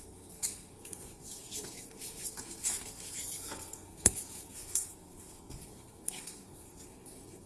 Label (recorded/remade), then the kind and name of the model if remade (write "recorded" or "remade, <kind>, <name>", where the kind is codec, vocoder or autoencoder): remade, codec, SNAC